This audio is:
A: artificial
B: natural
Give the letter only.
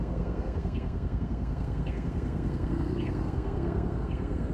A